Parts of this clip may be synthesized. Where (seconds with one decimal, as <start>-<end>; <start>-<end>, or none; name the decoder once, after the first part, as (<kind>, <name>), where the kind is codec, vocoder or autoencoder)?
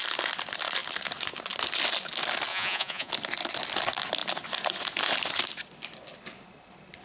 2.5-3.1 (vocoder, Vocos)